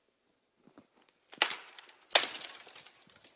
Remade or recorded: recorded